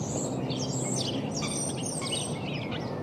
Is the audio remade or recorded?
recorded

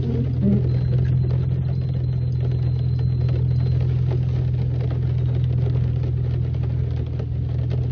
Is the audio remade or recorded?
recorded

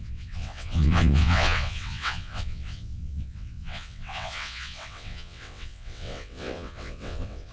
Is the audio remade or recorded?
remade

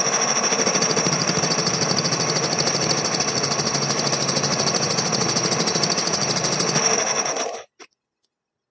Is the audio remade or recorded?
recorded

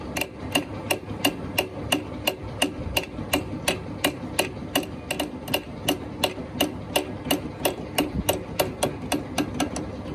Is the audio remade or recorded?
recorded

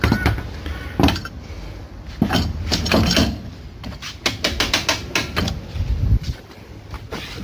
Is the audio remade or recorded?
recorded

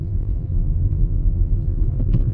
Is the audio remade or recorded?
remade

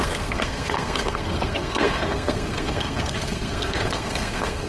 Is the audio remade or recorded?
remade